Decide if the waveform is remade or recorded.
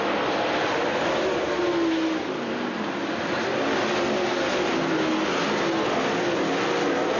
recorded